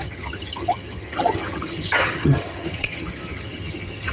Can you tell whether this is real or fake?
fake